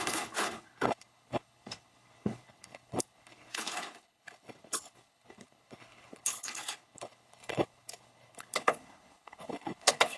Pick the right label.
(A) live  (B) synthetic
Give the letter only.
B